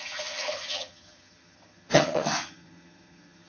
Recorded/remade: remade